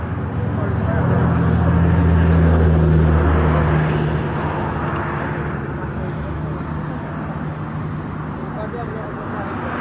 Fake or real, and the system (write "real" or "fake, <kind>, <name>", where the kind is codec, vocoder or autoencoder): real